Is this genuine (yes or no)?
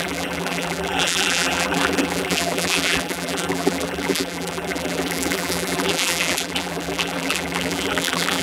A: no